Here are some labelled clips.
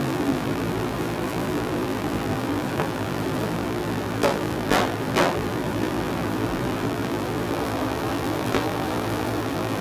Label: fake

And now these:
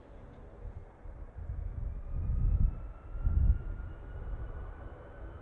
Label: fake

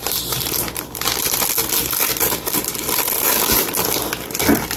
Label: real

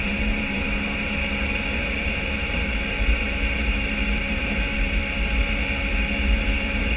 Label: fake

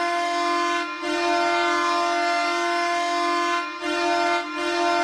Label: real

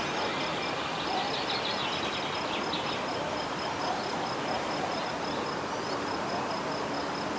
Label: real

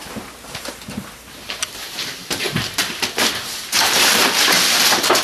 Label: fake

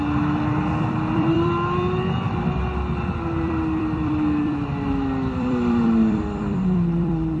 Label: fake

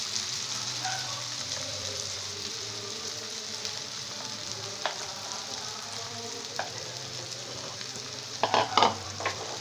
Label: fake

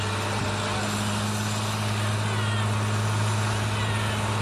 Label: real